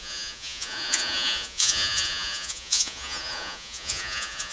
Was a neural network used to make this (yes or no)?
yes